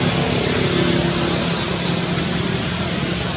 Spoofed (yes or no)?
no